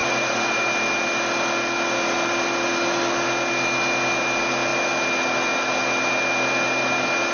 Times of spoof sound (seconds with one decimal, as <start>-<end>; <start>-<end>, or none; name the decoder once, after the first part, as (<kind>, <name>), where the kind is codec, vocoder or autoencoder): 0.0-0.6 (vocoder, BigVGAN v2)